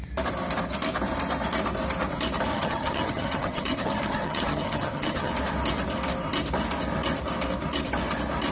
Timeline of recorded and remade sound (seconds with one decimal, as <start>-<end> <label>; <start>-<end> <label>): 0.0-2.5 recorded; 2.5-5.3 remade; 5.3-8.5 recorded